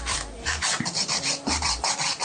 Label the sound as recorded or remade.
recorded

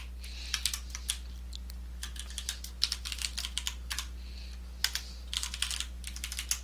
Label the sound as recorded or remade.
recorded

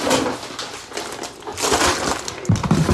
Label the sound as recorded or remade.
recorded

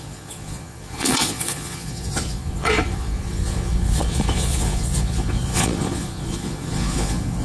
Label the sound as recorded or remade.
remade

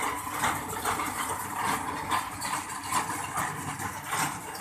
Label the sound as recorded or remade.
recorded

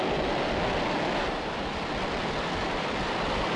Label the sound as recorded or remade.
remade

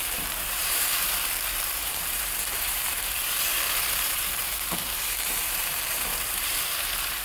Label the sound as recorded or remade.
remade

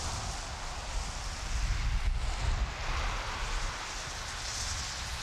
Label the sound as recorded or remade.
recorded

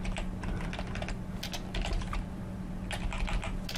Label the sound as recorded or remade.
recorded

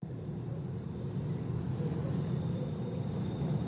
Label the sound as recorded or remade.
remade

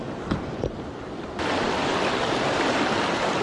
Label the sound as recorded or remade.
recorded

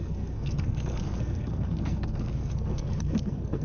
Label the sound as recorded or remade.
remade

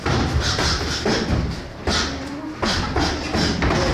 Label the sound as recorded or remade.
recorded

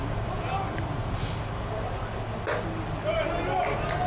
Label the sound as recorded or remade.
recorded